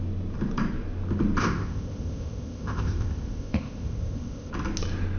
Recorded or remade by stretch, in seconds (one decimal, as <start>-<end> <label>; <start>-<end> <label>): 0.0-1.4 recorded; 1.4-4.5 remade; 4.5-5.2 recorded